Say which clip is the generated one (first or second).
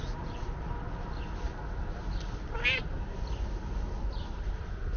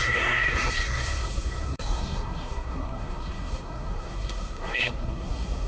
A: second